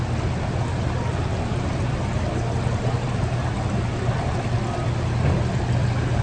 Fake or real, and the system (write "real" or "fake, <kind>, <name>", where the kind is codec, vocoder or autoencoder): real